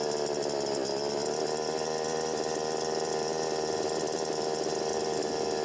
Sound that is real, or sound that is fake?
fake